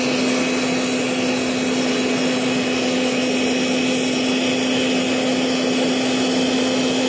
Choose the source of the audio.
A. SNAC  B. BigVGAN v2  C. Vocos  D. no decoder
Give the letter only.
D